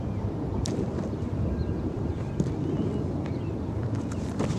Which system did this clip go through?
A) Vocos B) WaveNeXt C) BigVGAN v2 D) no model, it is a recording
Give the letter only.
C